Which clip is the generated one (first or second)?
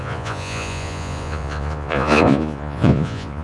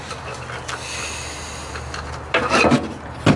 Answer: first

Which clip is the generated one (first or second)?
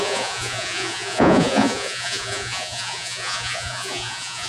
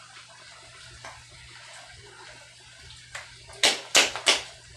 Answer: first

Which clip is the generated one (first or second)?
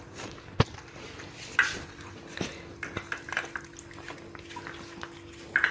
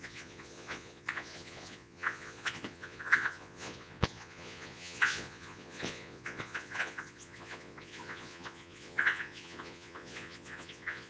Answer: second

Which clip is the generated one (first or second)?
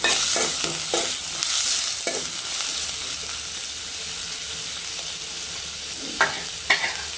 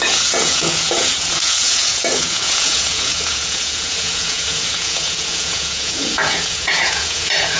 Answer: second